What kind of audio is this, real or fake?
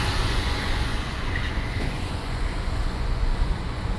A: fake